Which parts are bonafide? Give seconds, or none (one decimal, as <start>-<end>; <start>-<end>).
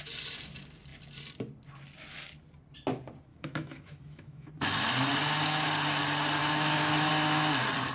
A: 0.0-3.3; 4.5-6.4; 7.1-7.9